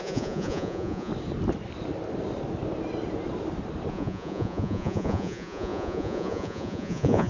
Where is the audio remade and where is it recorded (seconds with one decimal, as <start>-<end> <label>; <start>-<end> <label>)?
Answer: 0.0-1.1 remade; 1.1-3.9 recorded; 3.9-7.3 remade